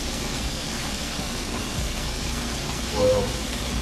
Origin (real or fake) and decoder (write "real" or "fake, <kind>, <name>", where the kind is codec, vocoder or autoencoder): fake, codec, SNAC